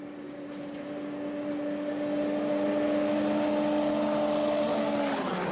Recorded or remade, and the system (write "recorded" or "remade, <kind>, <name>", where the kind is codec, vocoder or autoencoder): recorded